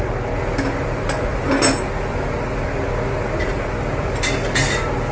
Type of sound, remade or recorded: recorded